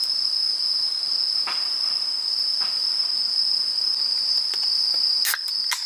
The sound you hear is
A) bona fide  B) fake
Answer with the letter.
A